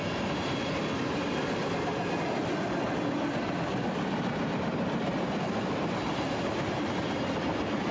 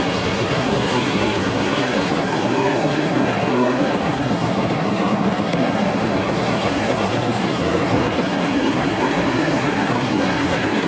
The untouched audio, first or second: first